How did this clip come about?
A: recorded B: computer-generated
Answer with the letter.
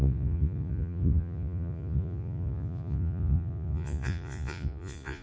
B